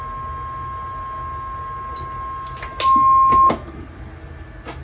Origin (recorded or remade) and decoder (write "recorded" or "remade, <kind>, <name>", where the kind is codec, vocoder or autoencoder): recorded